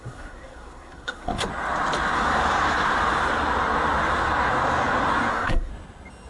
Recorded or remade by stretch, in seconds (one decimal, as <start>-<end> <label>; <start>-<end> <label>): 0.0-1.5 remade; 1.5-5.3 recorded; 5.3-5.7 remade; 5.7-6.3 recorded